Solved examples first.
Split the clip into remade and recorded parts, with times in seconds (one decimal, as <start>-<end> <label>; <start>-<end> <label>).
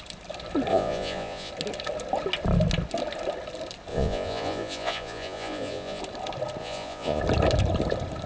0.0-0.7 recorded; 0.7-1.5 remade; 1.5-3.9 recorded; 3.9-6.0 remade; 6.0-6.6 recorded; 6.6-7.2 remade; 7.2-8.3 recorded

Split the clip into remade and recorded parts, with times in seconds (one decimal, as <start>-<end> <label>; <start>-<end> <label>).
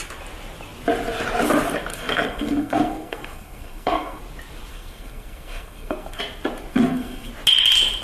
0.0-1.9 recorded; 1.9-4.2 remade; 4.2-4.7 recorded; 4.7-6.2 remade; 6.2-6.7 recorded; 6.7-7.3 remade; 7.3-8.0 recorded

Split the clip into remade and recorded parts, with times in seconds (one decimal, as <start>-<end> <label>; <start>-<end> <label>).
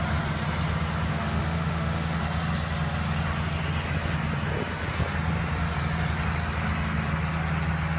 0.0-1.1 recorded; 1.1-2.2 remade; 2.2-8.0 recorded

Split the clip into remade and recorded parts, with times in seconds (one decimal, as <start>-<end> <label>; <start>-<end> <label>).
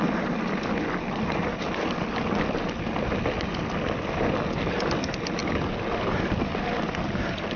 0.0-7.6 recorded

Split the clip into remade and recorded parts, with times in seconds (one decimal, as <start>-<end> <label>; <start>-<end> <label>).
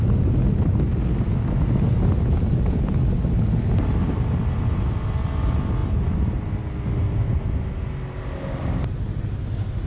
0.0-9.9 recorded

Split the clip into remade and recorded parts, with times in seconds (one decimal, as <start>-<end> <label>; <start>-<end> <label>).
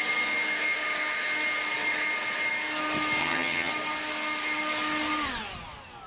0.0-3.2 recorded; 3.2-3.7 remade; 3.7-6.1 recorded